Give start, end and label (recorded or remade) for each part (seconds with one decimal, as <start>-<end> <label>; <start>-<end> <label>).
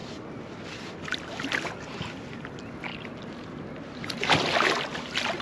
0.0-5.4 recorded